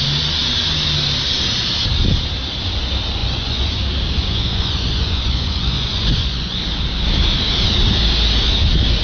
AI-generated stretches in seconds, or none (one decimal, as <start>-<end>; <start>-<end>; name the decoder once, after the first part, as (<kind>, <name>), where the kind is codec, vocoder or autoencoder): 3.2-3.8 (vocoder, Vocos); 4.2-6.6